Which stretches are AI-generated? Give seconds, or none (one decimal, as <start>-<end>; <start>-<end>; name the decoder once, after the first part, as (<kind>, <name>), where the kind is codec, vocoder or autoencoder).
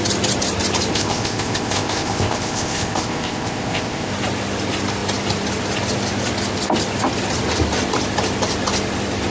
0.9-4.1 (codec, ZipCodec)